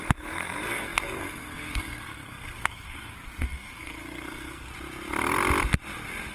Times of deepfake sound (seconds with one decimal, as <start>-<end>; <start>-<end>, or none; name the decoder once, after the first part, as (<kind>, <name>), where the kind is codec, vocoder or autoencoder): 0.0-4.7 (codec, SNAC)